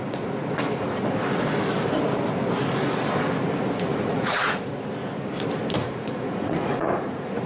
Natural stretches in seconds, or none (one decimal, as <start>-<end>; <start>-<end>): 0.0-3.9; 4.6-5.8